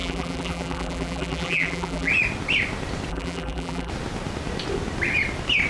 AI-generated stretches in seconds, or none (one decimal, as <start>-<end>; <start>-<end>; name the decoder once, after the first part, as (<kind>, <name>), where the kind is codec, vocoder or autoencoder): 0.0-2.1 (vocoder, BigVGAN v2); 3.1-3.9

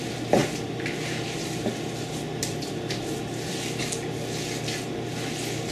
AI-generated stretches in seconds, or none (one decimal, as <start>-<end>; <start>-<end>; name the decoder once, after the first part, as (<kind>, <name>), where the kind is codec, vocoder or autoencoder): 0.4-3.8 (vocoder, BigVGAN v2)

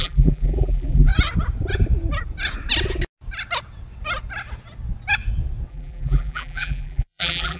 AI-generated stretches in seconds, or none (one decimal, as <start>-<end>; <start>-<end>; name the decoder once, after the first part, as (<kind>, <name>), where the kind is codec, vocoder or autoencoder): 0.0-1.1 (vocoder, BigVGAN v2); 5.7-7.6

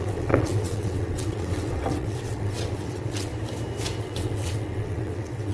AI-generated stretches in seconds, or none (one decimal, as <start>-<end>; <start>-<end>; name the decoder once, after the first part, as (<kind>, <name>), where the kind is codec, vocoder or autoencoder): 0.0-3.3 (vocoder, WaveNeXt); 4.0-5.5